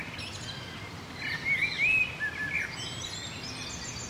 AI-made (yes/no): no